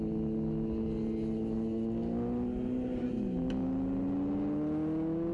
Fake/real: real